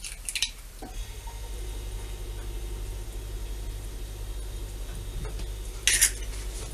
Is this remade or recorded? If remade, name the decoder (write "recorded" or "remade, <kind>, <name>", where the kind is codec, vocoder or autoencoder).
recorded